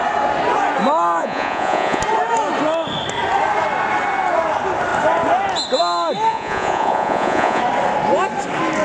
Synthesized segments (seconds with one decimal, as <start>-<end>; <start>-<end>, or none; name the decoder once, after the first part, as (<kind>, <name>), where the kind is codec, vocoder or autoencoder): 1.2-2.0 (vocoder, Vocos); 6.3-7.6